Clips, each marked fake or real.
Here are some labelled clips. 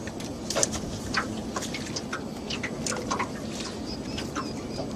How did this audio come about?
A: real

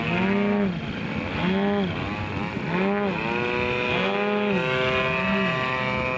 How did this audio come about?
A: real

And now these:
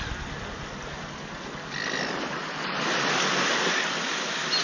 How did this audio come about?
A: real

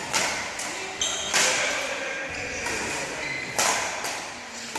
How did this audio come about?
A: real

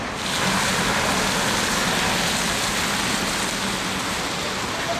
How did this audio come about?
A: real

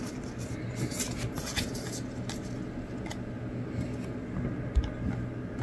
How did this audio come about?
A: real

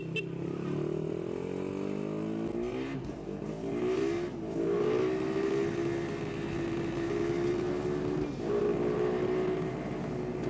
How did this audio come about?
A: real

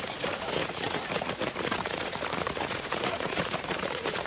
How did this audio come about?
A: fake